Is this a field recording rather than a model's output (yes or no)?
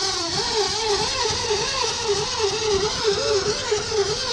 yes